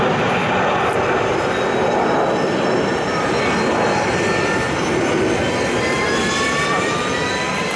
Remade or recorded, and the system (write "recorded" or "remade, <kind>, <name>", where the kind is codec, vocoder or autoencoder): recorded